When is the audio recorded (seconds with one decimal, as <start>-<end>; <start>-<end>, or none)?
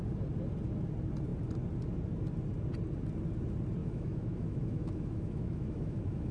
0.0-3.8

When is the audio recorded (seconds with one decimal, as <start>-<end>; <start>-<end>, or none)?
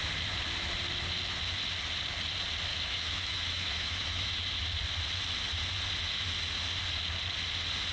0.0-2.7; 4.3-7.9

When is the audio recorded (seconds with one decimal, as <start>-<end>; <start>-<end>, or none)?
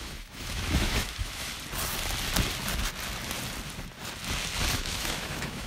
1.5-4.7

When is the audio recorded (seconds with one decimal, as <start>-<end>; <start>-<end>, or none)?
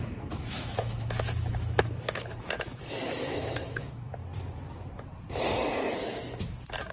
4.2-6.9